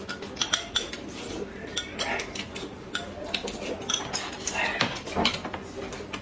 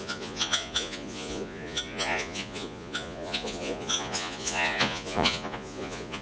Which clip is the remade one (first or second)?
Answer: second